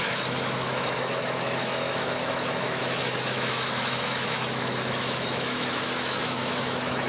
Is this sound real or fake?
fake